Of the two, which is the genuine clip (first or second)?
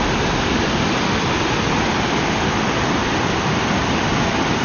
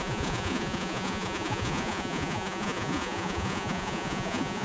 first